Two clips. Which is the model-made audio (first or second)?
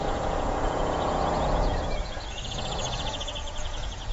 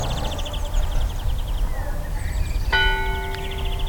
first